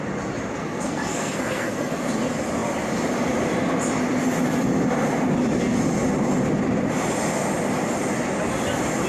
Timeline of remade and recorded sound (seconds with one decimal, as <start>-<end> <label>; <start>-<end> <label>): 0.0-0.6 recorded; 0.6-2.1 remade; 2.1-9.1 recorded